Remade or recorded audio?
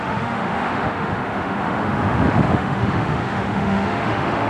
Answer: remade